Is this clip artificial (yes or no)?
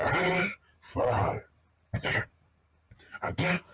yes